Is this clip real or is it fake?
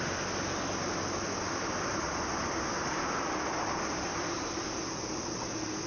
real